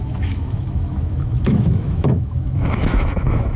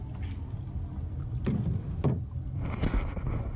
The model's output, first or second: first